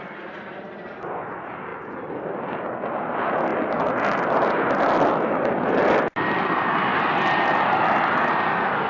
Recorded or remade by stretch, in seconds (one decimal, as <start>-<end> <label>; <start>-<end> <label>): 0.0-8.9 recorded